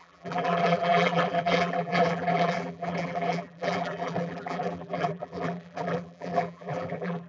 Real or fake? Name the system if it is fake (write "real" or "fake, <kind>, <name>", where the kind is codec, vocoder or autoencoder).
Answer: fake, vocoder, BigVGAN v2